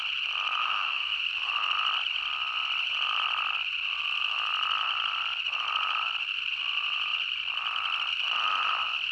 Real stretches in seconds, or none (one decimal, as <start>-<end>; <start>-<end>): 0.0-0.6; 1.2-9.1